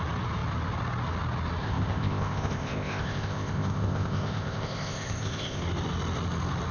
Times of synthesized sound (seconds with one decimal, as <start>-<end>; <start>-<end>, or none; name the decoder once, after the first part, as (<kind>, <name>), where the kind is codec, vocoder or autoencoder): 1.6-5.6 (codec, ZipCodec)